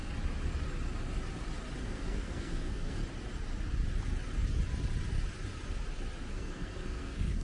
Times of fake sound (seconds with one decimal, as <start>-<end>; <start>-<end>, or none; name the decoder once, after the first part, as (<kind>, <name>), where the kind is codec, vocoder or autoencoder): 1.8-3.0 (codec, SNAC); 6.3-7.4